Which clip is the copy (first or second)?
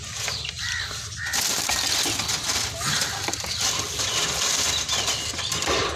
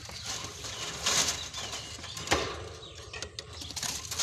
first